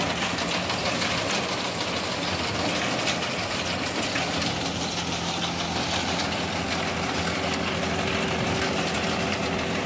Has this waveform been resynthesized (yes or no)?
no